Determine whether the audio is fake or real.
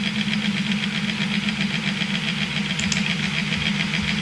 real